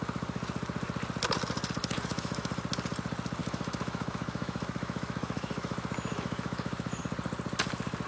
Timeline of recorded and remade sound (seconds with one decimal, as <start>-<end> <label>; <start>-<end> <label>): 0.0-1.8 recorded; 1.8-2.5 remade; 2.5-3.4 recorded; 3.4-7.0 remade; 7.0-8.1 recorded